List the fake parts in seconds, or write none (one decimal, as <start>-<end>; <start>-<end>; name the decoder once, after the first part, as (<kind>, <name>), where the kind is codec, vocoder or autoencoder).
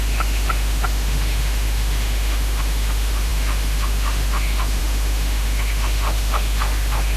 0.0-7.2 (autoencoder, DAC-VAE)